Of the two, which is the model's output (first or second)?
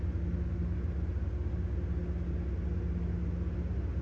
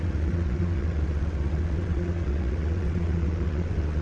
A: second